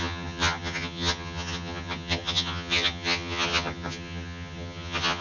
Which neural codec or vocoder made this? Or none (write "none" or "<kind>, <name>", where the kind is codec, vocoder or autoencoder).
vocoder, HiFi-GAN